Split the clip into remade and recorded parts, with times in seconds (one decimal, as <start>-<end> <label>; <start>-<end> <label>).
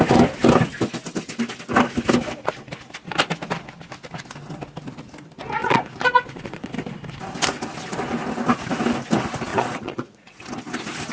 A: 0.0-5.6 recorded; 5.6-6.7 remade; 6.7-9.5 recorded; 9.5-10.4 remade; 10.4-11.1 recorded